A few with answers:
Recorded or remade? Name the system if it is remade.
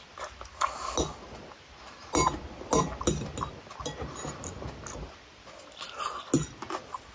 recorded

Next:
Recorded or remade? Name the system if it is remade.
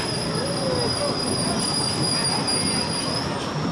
recorded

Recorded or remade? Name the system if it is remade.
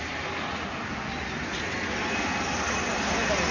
recorded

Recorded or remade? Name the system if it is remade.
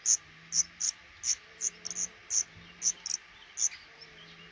recorded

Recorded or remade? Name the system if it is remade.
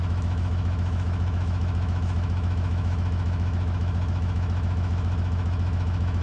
remade, autoencoder, DAC-VAE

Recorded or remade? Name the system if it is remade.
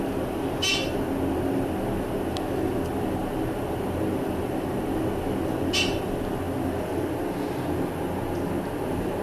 recorded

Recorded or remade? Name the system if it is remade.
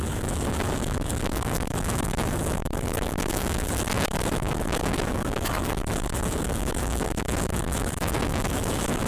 remade, autoencoder, DAC-VAE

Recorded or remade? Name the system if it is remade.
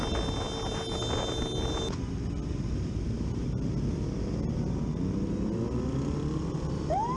recorded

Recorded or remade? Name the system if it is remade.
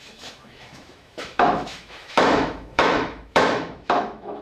remade, autoencoder, DAC-VAE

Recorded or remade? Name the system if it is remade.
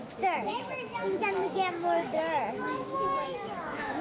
remade, autoencoder, DAC-VAE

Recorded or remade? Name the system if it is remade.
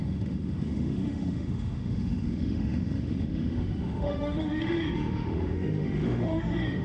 remade, autoencoder, DAC-VAE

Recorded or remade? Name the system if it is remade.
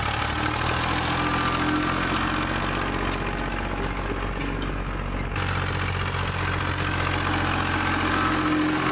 recorded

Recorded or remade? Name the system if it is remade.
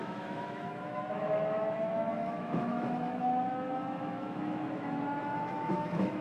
remade, autoencoder, DAC-VAE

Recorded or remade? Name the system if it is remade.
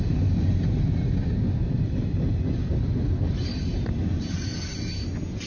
recorded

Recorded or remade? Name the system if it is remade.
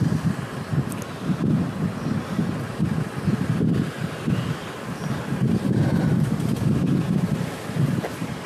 recorded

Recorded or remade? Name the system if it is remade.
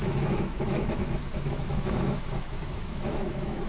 remade, autoencoder, DAC-VAE